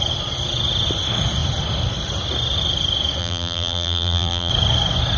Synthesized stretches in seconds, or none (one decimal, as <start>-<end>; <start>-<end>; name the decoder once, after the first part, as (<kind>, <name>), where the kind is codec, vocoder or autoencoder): 3.2-4.5 (vocoder, BigVGAN v2)